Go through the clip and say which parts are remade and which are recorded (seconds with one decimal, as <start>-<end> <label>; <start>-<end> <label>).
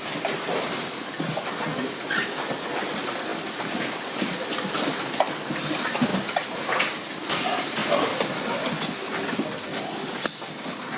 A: 0.0-11.0 recorded